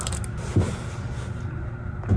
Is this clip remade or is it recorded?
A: recorded